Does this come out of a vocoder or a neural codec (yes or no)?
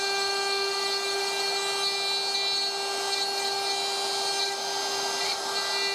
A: no